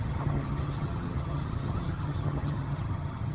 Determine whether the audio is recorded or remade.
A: remade